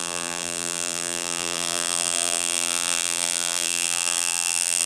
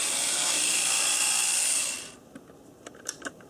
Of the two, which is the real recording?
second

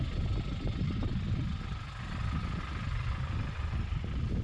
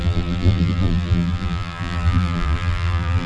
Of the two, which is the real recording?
first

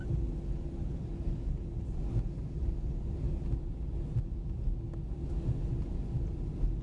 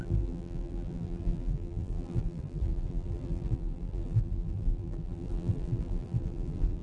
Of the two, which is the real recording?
first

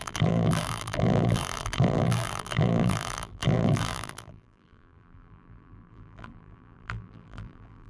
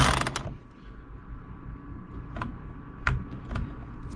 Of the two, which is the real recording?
second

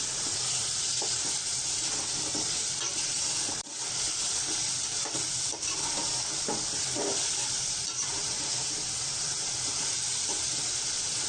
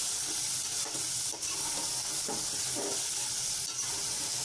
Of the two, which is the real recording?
second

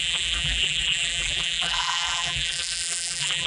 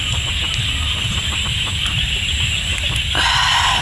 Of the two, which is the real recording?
second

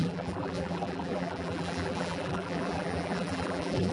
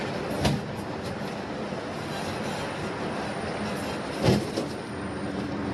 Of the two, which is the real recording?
second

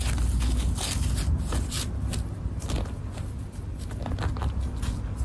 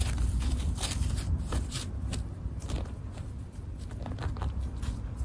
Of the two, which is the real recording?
first